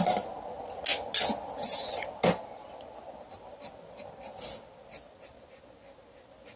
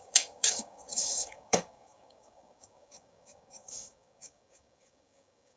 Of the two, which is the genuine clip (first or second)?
first